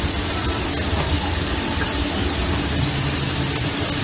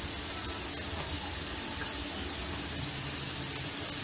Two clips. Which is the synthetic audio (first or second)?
first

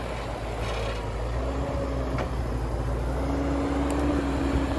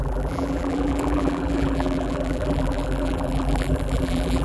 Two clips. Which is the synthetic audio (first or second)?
second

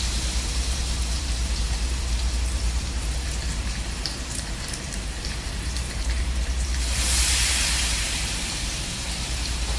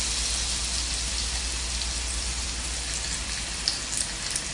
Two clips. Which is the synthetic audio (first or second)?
first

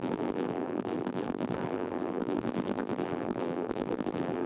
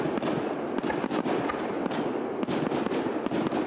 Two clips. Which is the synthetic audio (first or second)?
first